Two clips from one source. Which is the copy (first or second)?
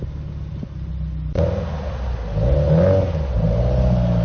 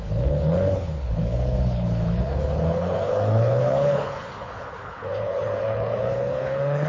second